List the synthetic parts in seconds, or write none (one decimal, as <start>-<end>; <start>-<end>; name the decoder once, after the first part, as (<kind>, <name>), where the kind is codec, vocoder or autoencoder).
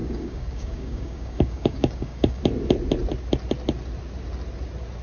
0.0-2.4 (codec, DAC)